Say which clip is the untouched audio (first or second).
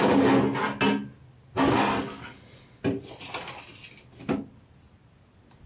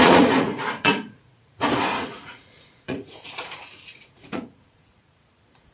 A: first